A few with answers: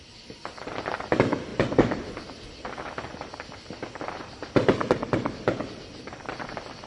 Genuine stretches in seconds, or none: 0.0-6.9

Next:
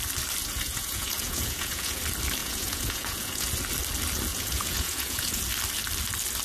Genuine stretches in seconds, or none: 0.0-0.4; 2.0-2.4; 3.5-4.3; 5.4-6.4

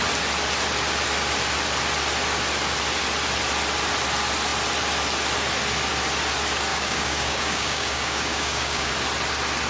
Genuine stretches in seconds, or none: 0.0-6.7; 8.9-9.7

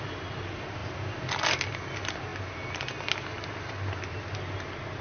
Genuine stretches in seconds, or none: 0.0-5.0

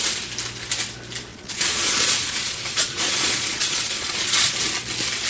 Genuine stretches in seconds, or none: 0.0-1.3; 4.5-5.3

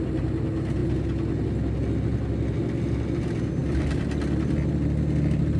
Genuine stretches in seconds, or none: 0.0-5.6

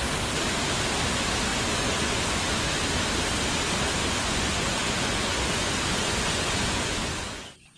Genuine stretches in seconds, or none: 0.0-1.5; 2.7-4.0

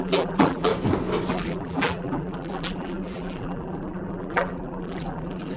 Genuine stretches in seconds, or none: 0.7-1.3